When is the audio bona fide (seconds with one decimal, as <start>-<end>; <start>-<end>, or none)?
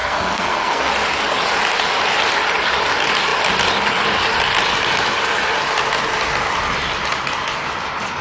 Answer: 0.9-8.2